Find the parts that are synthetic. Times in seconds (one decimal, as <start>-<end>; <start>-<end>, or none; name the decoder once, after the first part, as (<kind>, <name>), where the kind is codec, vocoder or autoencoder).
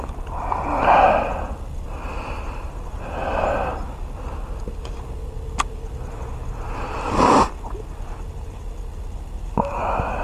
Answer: none